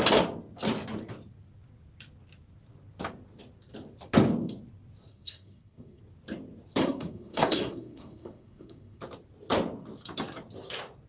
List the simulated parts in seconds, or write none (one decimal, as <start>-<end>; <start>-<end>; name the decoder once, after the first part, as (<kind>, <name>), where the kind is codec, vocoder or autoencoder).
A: 5.1-6.0 (codec, SNAC); 6.8-9.0